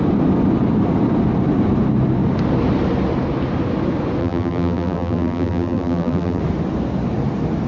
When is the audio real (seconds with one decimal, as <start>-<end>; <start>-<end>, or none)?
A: 0.0-4.2; 6.4-7.7